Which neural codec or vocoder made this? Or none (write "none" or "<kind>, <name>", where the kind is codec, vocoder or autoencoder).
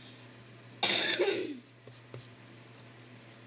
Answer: none